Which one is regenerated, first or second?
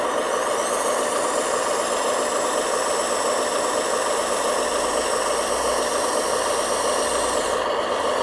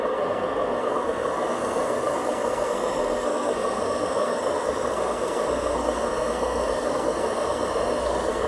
second